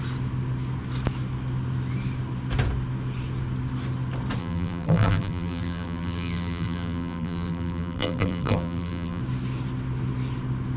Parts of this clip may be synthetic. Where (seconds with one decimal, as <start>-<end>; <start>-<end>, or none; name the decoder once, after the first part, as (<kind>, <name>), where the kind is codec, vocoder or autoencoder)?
4.4-9.2 (vocoder, BigVGAN v2)